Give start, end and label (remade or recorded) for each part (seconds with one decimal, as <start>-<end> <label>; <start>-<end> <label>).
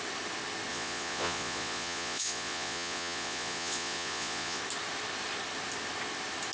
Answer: 0.0-0.7 recorded; 0.7-4.6 remade; 4.6-6.5 recorded